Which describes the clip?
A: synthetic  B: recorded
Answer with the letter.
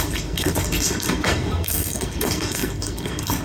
A